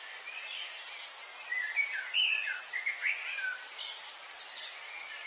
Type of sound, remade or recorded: recorded